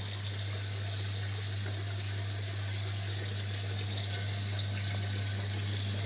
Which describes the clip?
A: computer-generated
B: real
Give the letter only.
B